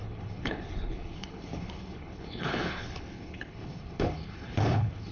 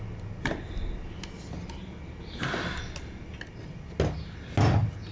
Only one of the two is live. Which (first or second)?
second